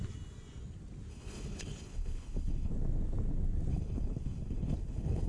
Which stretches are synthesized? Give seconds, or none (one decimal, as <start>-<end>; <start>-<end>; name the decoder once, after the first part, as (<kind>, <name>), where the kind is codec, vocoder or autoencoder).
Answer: 1.1-2.7 (codec, HILCodec); 3.7-5.3